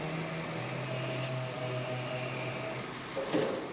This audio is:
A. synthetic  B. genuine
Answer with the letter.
B